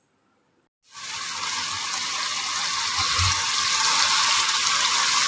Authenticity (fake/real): real